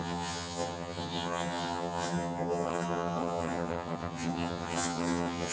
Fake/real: fake